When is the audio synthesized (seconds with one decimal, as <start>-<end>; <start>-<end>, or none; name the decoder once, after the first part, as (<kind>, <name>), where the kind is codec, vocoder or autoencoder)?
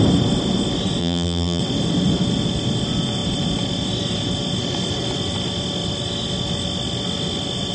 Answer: 1.0-1.6 (vocoder, BigVGAN v2)